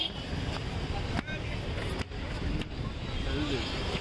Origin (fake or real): real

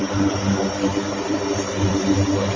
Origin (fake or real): fake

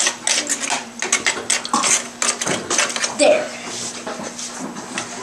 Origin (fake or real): real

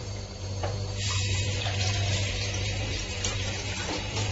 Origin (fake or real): fake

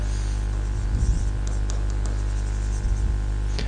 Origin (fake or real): real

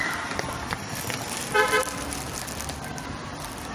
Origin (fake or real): fake